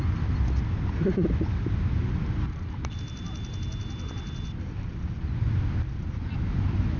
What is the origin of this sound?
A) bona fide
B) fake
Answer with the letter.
A